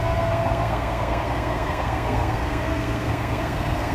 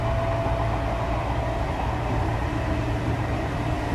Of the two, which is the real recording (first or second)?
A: second